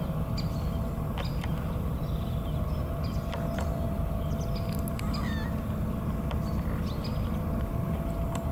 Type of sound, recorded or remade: recorded